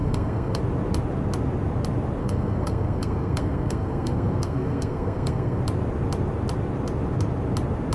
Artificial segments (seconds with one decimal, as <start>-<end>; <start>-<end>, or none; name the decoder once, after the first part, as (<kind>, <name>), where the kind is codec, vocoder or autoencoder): 0.0-0.6 (codec, SNAC); 2.2-5.6